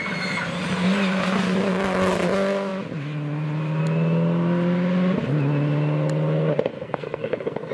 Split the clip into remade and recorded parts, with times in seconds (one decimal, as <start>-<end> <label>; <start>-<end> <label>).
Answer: 0.0-6.7 recorded; 6.7-7.7 remade